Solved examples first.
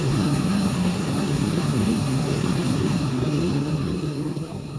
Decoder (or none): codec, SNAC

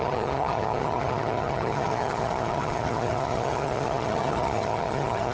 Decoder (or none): vocoder, HiFi-GAN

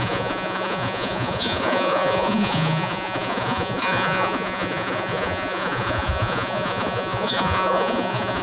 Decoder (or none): vocoder, Vocos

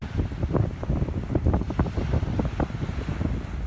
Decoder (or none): vocoder, BigVGAN v2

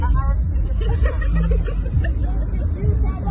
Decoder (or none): none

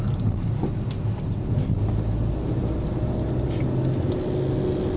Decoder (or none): none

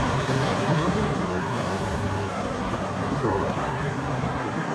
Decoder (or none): codec, SNAC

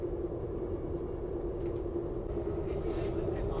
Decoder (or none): none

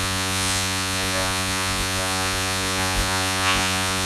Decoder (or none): vocoder, Vocos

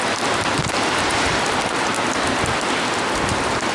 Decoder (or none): none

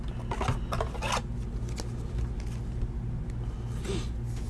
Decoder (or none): none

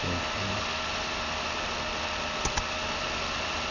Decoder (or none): none